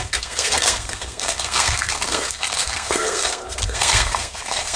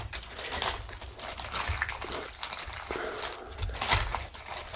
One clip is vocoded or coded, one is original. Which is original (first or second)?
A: second